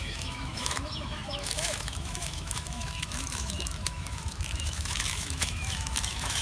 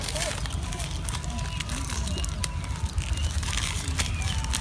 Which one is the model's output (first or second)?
first